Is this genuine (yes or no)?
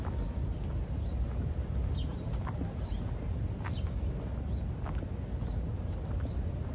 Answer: yes